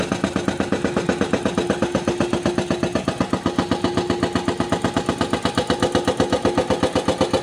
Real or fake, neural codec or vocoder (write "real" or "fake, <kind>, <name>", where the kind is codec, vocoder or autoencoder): real